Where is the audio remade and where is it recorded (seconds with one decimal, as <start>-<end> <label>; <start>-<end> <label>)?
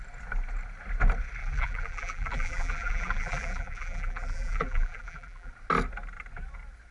0.0-1.4 recorded; 1.4-5.5 remade; 5.5-6.9 recorded